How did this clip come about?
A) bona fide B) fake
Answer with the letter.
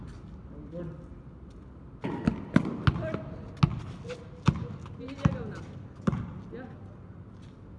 A